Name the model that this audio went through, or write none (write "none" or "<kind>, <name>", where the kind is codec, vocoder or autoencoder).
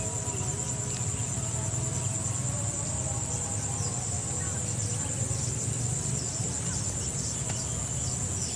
none